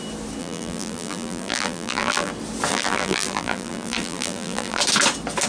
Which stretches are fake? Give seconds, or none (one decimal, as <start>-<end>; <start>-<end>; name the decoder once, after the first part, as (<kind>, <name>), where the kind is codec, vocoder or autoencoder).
0.4-2.3 (vocoder, BigVGAN v2); 2.7-4.8